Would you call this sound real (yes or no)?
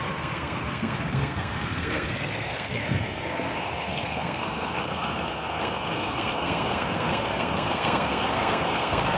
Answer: no